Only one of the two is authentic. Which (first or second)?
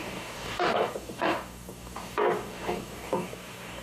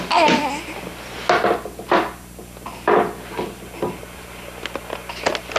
second